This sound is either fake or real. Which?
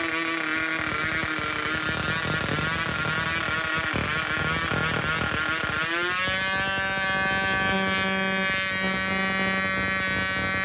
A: real